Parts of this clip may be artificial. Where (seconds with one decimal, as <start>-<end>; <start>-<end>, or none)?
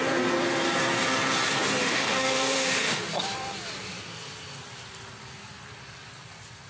1.8-3.0